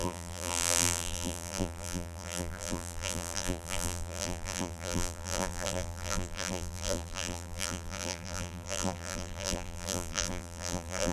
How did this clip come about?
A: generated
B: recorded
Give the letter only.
A